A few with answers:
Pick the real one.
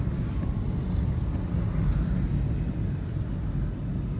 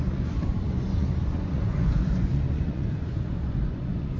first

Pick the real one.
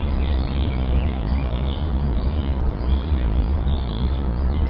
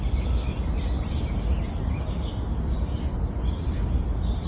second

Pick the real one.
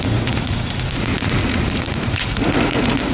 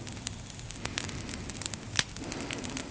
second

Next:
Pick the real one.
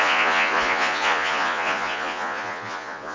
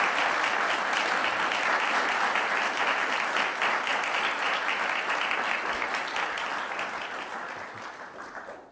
second